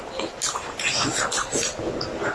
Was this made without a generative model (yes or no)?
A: yes